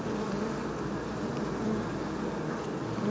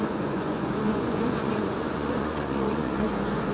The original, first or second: first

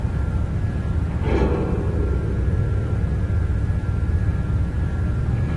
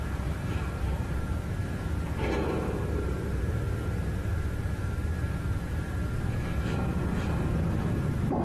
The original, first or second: first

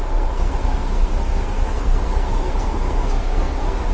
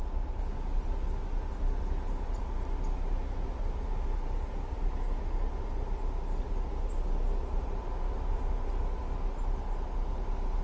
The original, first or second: second